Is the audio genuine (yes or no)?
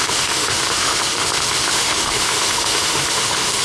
no